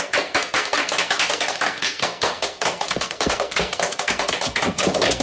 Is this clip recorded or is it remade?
remade